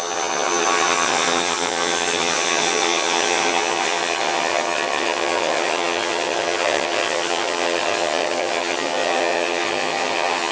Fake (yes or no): yes